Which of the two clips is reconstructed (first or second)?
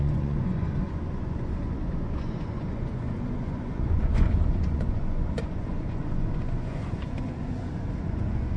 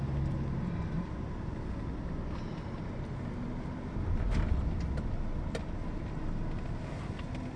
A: first